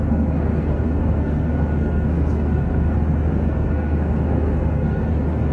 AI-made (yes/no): yes